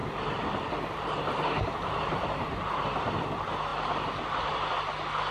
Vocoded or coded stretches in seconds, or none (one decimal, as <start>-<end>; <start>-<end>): none